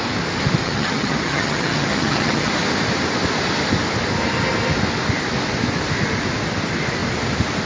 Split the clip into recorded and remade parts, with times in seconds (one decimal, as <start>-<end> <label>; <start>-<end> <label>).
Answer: 0.0-0.6 recorded; 0.6-2.5 remade; 2.5-7.7 recorded